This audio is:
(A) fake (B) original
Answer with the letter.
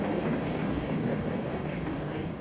A